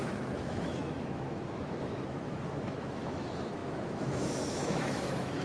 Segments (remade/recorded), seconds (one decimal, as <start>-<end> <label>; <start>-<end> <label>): 0.0-5.4 remade